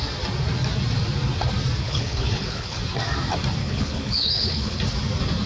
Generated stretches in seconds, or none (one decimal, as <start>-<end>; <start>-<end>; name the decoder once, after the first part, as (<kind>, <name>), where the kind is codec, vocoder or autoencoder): 1.8-2.8 (codec, HILCodec); 3.6-4.8